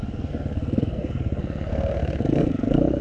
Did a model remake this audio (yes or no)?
yes